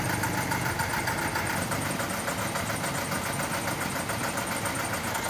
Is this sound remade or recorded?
recorded